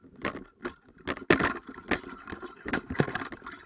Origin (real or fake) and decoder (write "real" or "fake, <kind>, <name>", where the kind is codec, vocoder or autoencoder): real